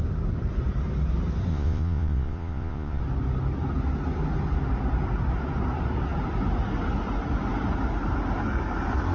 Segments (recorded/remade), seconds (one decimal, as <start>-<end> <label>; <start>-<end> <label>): 0.0-1.5 recorded; 1.5-3.0 remade; 3.0-9.1 recorded